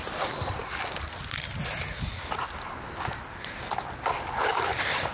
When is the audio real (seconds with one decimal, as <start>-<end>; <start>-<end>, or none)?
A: 0.0-5.1